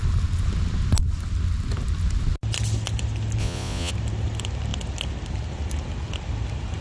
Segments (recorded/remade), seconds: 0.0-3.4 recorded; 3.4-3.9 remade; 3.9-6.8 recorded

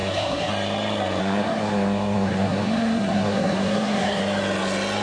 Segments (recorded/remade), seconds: 0.0-0.5 remade; 0.5-1.2 recorded; 1.2-4.2 remade; 4.2-5.0 recorded

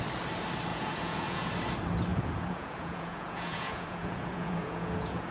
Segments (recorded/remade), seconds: 0.0-0.7 recorded; 0.7-1.5 remade; 1.5-2.1 recorded; 2.1-5.3 remade